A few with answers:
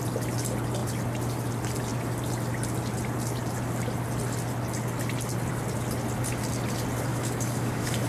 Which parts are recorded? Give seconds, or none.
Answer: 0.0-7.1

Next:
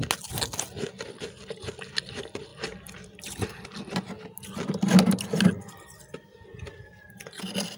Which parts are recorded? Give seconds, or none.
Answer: 0.0-2.5; 3.3-7.8

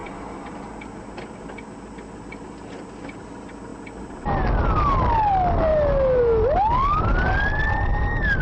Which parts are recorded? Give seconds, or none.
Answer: 0.0-8.4

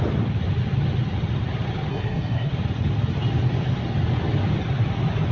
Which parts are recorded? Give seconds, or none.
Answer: 0.0-1.9; 2.5-5.3

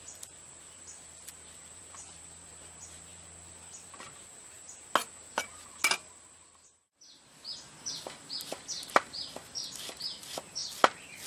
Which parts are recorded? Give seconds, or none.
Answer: 3.1-6.2; 10.6-11.3

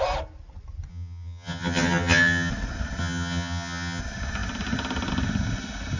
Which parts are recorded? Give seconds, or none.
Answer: 0.0-0.9; 2.5-3.0; 4.0-6.0

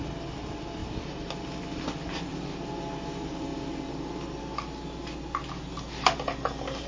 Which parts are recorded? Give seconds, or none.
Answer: 0.0-6.9